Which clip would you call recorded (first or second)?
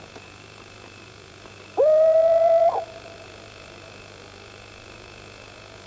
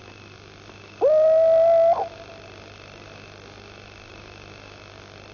second